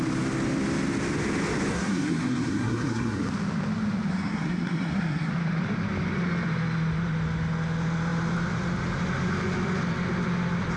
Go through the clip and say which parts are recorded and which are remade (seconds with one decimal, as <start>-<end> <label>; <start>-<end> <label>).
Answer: 0.0-1.7 recorded; 1.7-3.2 remade; 3.2-4.1 recorded; 4.1-5.3 remade; 5.3-10.8 recorded